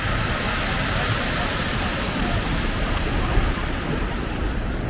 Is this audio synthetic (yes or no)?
no